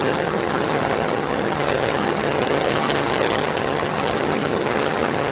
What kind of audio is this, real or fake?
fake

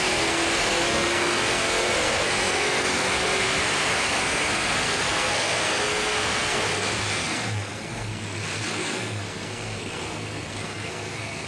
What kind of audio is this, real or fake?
fake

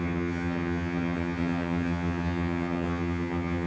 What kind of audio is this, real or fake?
fake